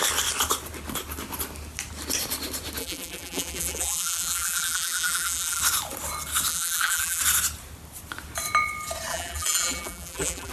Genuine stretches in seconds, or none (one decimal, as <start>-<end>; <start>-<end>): 0.0-2.8; 5.6-6.5; 7.2-9.1